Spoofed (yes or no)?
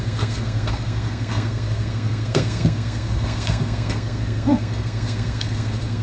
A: yes